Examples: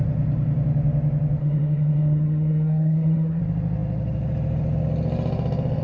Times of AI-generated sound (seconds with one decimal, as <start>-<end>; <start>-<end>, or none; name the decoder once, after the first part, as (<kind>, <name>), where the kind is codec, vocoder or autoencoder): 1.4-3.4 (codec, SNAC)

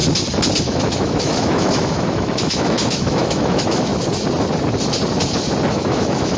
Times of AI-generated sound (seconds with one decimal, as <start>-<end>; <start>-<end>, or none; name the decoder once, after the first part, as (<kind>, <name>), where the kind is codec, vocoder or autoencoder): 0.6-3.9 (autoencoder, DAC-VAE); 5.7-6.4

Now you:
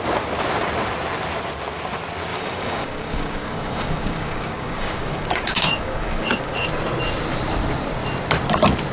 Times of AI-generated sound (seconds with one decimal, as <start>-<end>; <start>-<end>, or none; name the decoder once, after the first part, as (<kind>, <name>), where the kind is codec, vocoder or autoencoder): 2.3-6.7 (codec, DAC)

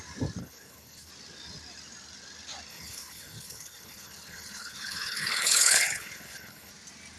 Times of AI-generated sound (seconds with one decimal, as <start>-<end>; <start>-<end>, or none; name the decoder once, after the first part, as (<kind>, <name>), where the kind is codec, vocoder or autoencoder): 0.4-1.1 (codec, HILCodec); 2.7-6.7

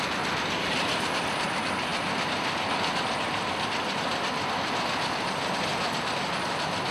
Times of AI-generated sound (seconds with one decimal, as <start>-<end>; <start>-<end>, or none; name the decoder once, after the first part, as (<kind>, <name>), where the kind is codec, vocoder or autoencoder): none

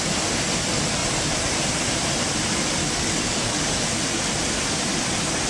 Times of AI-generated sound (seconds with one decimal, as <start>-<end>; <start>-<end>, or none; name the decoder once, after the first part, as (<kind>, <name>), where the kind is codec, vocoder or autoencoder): 2.8-4.0 (codec, DAC)

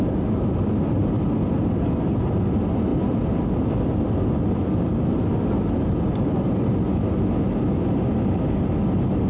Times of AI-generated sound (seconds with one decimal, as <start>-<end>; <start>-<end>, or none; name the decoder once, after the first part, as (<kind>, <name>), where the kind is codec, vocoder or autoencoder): none

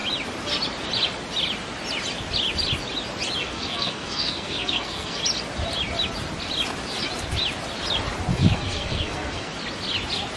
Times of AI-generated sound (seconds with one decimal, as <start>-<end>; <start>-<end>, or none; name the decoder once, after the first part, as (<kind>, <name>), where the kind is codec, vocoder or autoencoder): 3.4-5.2 (codec, SNAC); 8.3-9.5